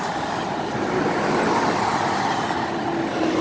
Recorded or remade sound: recorded